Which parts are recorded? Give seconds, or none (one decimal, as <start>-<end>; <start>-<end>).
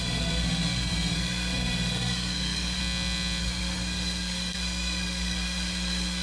2.8-3.4